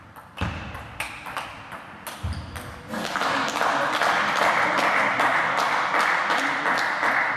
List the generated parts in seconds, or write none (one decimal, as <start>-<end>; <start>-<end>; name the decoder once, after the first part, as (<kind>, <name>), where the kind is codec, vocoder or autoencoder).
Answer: none